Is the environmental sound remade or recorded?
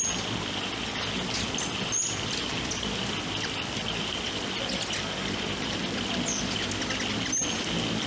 recorded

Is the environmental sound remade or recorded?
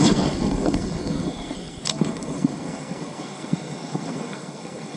remade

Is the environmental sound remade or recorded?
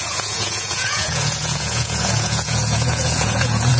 remade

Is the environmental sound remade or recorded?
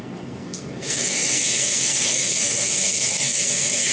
remade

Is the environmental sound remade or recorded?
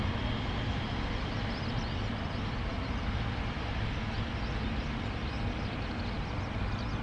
recorded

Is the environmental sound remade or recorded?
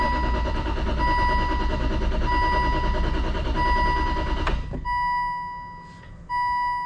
recorded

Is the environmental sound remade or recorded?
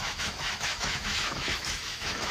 remade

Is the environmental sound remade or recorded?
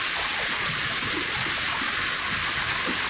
recorded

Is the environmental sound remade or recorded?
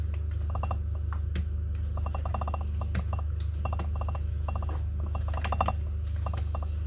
recorded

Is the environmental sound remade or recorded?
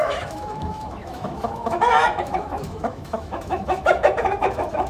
remade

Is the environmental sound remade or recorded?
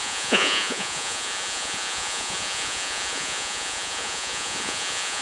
remade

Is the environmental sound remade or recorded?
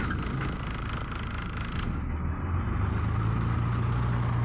recorded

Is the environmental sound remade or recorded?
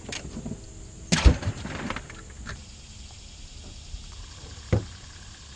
recorded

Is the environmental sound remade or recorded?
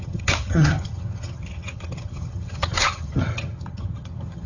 remade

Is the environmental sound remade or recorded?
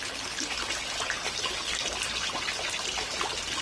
recorded